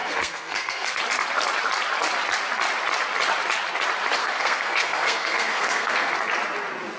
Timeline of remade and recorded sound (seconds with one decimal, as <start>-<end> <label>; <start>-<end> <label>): 0.0-1.0 remade; 1.0-4.2 recorded; 4.2-6.1 remade; 6.1-7.0 recorded